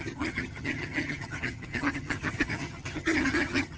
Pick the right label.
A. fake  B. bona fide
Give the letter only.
A